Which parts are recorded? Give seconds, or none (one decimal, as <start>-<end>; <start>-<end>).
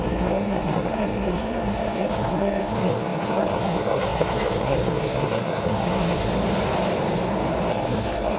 6.3-7.7